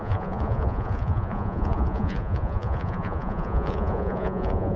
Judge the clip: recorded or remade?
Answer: remade